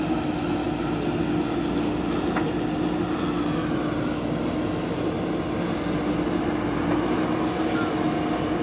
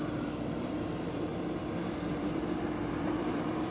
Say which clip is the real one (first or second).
first